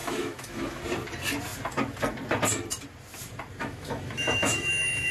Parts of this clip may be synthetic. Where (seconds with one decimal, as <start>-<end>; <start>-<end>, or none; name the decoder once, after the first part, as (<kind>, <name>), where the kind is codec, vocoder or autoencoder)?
0.0-0.8 (autoencoder, DAC-VAE); 3.6-5.1